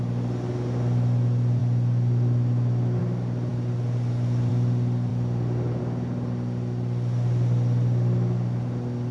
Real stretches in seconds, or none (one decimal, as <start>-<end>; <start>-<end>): 0.0-9.1